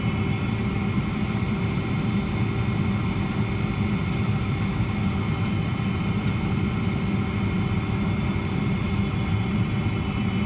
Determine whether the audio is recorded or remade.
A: recorded